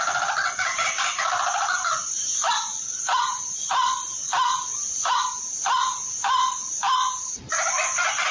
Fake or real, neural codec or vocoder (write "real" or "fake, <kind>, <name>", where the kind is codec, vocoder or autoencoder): real